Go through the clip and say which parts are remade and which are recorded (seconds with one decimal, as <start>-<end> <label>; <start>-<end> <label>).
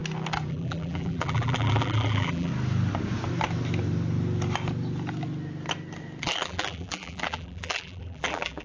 0.0-0.5 recorded; 0.5-2.5 remade; 2.5-6.2 recorded; 6.2-8.6 remade